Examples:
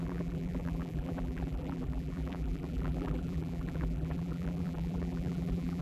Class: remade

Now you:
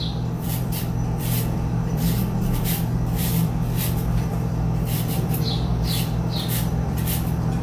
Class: remade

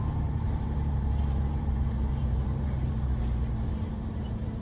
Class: remade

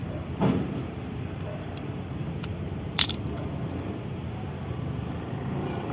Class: remade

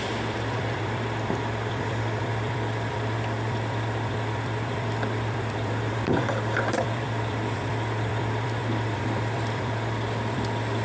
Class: remade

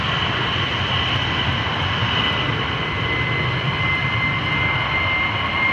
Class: recorded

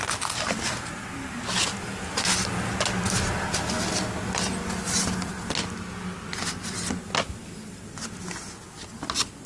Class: recorded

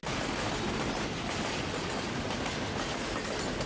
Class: recorded